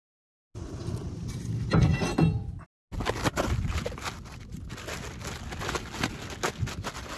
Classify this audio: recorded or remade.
recorded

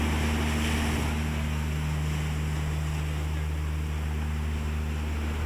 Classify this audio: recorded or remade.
recorded